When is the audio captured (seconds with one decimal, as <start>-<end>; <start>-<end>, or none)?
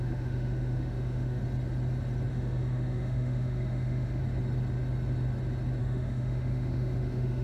1.4-2.3; 4.2-5.8